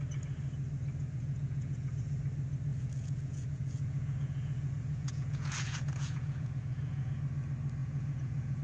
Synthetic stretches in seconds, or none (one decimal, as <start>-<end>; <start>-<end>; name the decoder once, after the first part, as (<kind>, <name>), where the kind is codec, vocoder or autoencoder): 1.0-2.2 (vocoder, Vocos); 2.7-7.1; 7.8-8.6